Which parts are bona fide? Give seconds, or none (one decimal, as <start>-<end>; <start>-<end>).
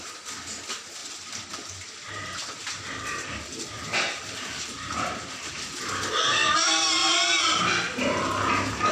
0.0-1.0; 5.8-8.9